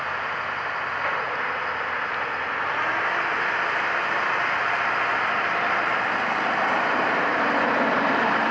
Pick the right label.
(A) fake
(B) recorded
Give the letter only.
B